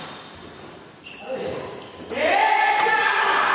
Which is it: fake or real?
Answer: real